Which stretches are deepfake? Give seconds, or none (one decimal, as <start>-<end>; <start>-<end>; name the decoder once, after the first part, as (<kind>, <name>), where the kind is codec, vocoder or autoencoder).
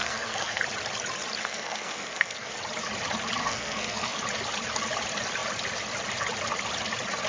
0.0-0.6 (codec, SNAC); 1.4-2.5; 3.4-4.2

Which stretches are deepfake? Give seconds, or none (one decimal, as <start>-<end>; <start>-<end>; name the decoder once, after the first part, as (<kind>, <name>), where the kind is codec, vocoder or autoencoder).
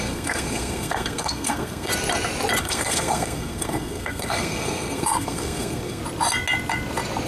0.0-1.9 (codec, SNAC); 2.6-6.0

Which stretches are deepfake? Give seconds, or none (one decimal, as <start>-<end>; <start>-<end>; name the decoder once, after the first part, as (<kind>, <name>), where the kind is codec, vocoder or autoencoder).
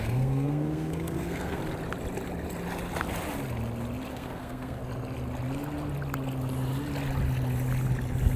0.0-1.6 (codec, SNAC); 4.1-4.8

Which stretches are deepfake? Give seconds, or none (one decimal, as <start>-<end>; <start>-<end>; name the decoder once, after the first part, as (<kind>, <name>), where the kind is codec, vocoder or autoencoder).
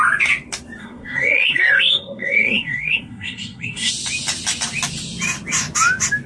0.8-3.9 (codec, SNAC)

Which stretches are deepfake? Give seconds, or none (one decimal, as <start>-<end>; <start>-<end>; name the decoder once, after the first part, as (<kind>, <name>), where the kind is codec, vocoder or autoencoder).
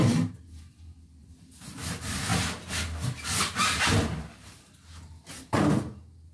none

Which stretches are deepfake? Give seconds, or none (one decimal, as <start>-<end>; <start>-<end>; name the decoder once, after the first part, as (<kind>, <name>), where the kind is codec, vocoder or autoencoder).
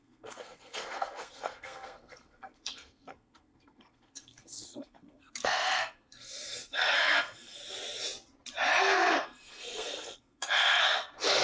0.0-7.6 (codec, SNAC); 8.8-11.4